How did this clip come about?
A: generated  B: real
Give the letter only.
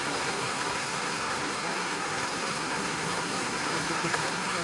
A